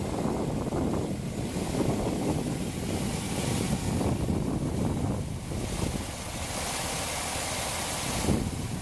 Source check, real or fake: real